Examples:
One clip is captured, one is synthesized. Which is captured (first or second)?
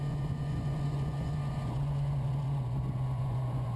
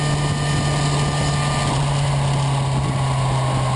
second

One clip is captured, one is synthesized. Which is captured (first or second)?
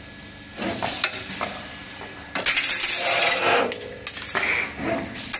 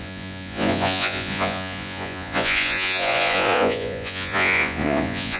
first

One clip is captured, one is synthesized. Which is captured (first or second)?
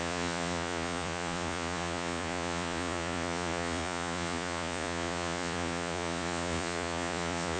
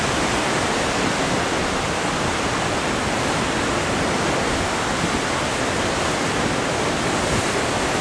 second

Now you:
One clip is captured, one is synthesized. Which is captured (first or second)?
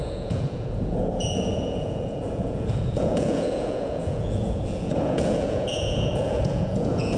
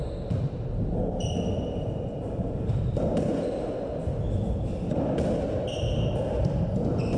second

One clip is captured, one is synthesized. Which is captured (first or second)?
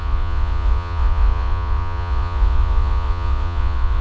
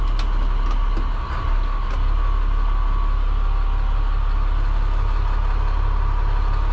second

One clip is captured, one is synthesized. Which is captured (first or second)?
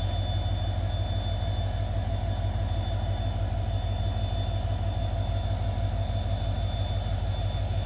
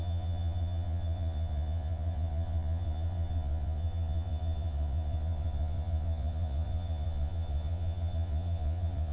first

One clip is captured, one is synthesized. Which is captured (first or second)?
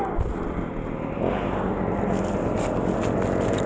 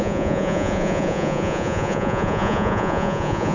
first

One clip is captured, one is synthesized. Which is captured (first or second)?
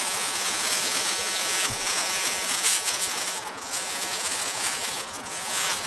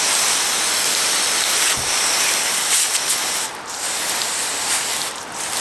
second